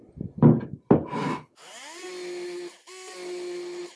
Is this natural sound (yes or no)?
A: yes